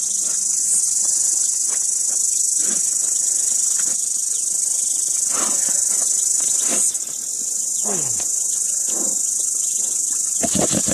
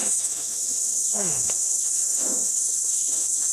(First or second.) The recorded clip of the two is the first